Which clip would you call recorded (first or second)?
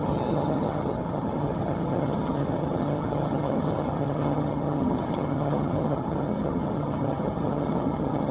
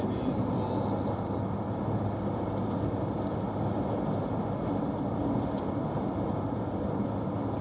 second